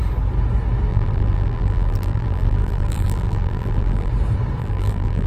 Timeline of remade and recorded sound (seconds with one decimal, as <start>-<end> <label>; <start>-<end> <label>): 0.0-0.9 recorded; 0.9-4.1 remade; 4.1-4.6 recorded; 4.6-5.3 remade